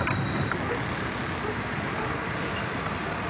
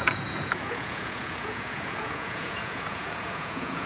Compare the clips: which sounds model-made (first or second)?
second